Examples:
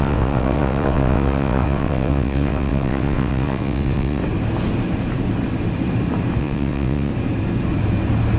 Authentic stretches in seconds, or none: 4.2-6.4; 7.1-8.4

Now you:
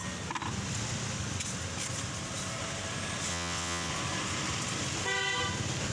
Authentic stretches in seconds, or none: 0.0-3.3; 3.9-5.9

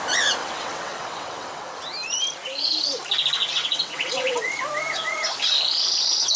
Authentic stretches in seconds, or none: 0.0-0.4; 1.8-3.4; 4.4-6.4

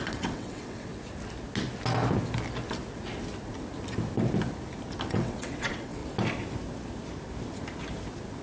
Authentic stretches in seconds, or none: 0.9-5.1; 6.0-8.4